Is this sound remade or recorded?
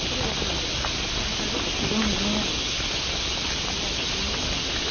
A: recorded